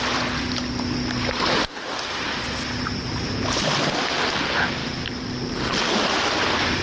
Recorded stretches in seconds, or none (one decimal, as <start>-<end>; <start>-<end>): 0.0-4.8; 5.3-6.8